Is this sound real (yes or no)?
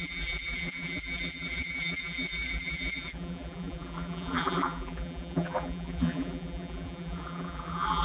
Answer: no